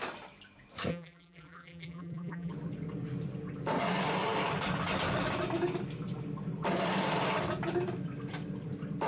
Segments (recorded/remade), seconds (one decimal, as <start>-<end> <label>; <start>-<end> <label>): 0.0-0.9 recorded; 0.9-2.5 remade; 2.5-9.1 recorded